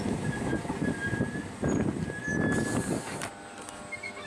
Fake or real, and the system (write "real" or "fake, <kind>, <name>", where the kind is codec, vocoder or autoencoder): real